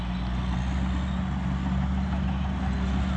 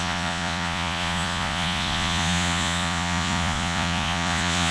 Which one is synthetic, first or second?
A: second